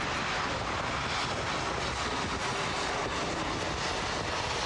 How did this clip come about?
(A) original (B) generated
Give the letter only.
A